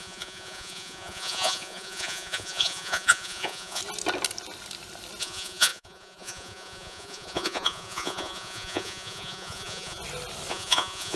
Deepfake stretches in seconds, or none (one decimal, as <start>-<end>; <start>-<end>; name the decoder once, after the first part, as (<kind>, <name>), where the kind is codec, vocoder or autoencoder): 0.0-3.8 (vocoder, Vocos); 5.2-10.0; 10.5-11.2